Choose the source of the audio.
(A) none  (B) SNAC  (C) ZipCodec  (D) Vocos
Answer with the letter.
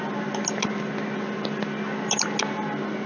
A